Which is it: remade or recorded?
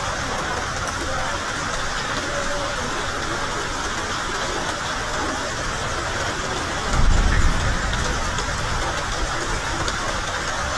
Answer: recorded